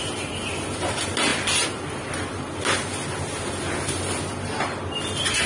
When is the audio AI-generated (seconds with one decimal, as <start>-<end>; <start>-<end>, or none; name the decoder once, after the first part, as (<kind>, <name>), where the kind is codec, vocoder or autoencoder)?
none